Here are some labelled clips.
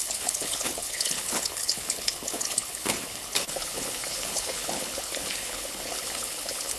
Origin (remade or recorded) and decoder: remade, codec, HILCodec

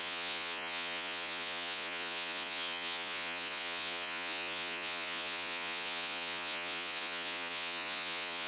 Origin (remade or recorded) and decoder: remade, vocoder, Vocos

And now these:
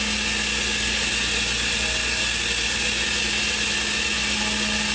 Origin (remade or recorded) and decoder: recorded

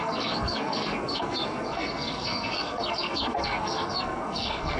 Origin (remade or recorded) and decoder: remade, codec, SNAC